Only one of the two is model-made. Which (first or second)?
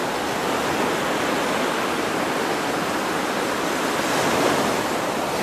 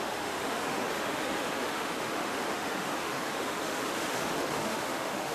second